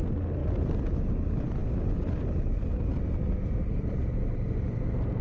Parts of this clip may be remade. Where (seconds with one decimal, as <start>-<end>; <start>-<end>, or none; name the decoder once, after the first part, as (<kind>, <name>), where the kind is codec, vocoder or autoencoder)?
0.4-0.9 (vocoder, BigVGAN v2)